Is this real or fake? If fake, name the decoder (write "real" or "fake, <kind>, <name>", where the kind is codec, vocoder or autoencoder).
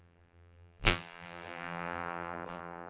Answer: fake, vocoder, BigVGAN v2